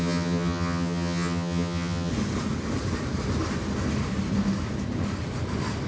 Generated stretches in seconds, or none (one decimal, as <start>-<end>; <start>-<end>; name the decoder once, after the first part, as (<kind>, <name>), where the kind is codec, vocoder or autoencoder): 0.0-2.1 (vocoder, HiFi-GAN)